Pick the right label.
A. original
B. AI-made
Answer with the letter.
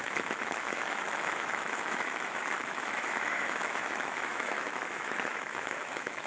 B